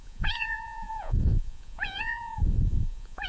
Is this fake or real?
fake